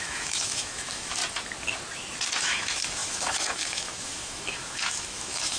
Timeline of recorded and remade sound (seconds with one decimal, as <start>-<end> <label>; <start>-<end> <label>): 0.0-1.2 remade; 1.2-2.4 recorded; 2.4-5.6 remade